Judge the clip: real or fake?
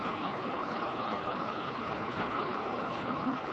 fake